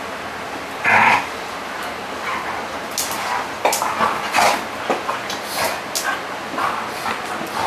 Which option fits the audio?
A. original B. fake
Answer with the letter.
A